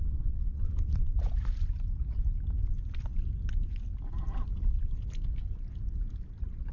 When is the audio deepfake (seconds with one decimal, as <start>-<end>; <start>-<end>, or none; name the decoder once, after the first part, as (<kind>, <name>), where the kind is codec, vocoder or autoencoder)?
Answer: 0.0-1.1 (vocoder, WaveNeXt)